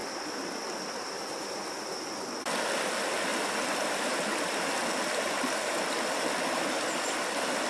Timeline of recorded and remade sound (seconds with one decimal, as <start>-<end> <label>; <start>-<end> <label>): 0.0-7.7 recorded